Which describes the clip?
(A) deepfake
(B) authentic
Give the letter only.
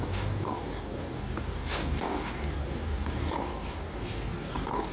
A